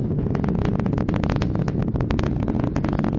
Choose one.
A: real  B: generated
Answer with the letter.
A